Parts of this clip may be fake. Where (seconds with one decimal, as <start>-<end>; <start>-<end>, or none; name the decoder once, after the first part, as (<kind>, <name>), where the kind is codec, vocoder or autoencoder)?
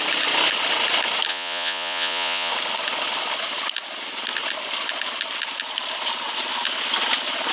1.3-2.5 (vocoder, Vocos)